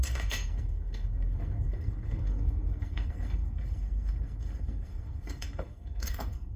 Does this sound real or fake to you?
fake